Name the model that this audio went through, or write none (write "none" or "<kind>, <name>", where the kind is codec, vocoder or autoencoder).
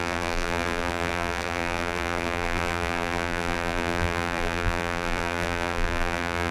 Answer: vocoder, BigVGAN v2